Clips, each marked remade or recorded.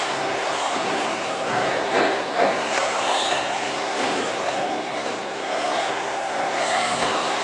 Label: remade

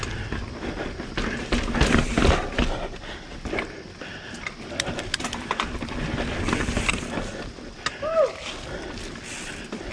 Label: recorded